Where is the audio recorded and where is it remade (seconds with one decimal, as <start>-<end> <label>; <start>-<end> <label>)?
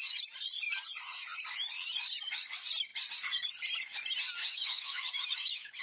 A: 0.0-4.4 recorded; 4.4-5.8 remade